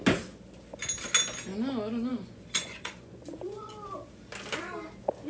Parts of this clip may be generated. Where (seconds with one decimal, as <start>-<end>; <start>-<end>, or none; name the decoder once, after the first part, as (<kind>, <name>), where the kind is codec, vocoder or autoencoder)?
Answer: 2.1-3.7 (vocoder, Vocos)